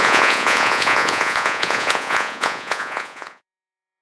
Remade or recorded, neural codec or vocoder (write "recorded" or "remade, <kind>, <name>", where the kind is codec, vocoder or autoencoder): remade, vocoder, Vocos